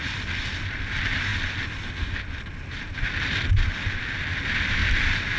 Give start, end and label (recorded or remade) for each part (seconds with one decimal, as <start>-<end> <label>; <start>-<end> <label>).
0.0-5.4 recorded